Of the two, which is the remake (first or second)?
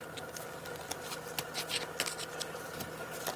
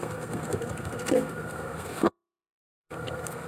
second